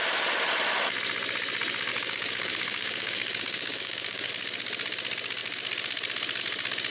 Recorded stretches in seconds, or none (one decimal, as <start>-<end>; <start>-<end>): 0.0-1.9; 4.3-6.9